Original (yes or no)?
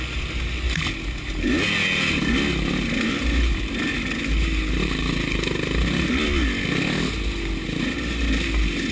yes